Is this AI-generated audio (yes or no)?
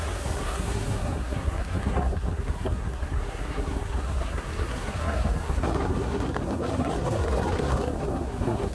yes